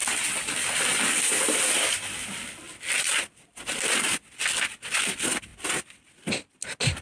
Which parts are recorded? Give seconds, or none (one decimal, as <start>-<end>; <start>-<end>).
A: 1.9-7.0